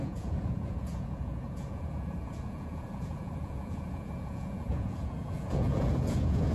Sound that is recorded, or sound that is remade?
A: remade